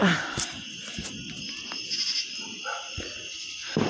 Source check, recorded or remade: recorded